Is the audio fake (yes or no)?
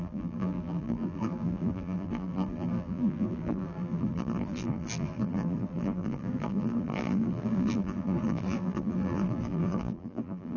yes